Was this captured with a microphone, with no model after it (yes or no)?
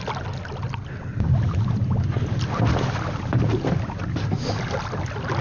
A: yes